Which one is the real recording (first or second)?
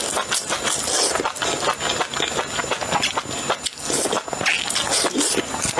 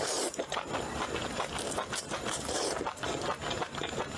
first